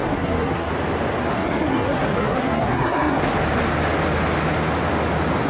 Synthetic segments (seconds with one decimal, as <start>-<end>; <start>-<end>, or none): 0.0-0.7; 1.2-3.2